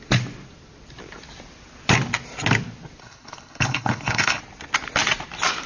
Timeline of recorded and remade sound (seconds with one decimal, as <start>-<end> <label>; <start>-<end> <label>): 0.0-3.0 recorded; 3.0-4.4 remade; 4.4-5.7 recorded